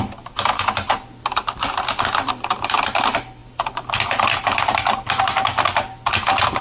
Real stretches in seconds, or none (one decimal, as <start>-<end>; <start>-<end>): 0.0-6.6